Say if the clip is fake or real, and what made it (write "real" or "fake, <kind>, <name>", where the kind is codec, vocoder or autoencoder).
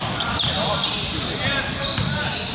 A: real